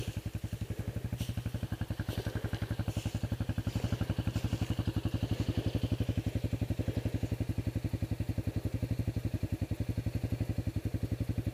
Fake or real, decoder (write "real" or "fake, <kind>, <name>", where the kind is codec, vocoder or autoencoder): real